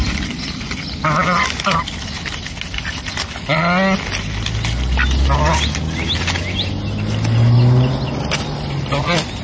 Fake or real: real